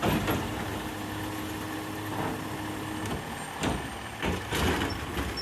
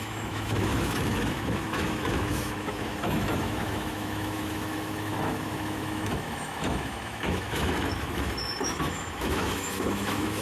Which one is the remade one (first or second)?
second